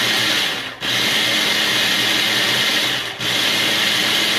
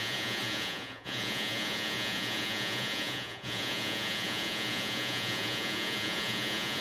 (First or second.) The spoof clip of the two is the second